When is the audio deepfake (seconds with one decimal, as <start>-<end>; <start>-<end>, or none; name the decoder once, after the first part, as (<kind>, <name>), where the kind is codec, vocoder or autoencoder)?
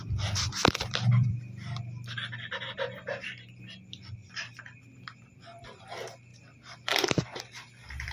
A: 0.0-8.1 (vocoder, BigVGAN v2)